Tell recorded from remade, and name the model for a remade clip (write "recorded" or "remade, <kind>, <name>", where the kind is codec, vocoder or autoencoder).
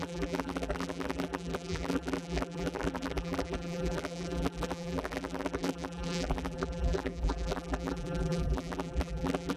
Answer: remade, vocoder, BigVGAN v2